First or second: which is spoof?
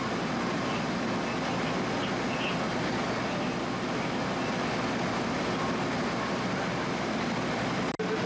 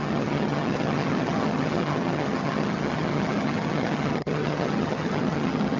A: second